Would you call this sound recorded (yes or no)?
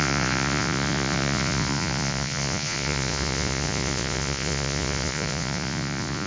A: no